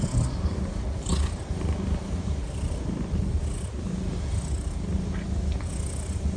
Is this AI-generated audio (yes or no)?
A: no